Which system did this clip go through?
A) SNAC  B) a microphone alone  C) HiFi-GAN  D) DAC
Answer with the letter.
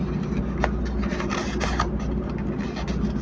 B